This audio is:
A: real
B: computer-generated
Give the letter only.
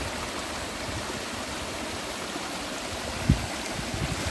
A